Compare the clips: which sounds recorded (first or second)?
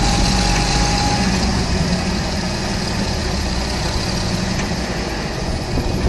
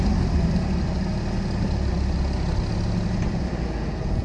second